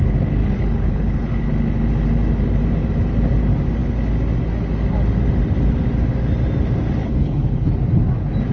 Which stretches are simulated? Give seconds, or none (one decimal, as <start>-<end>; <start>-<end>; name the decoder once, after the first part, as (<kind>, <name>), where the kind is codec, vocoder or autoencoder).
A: 0.4-1.5 (codec, HILCodec); 7.0-7.7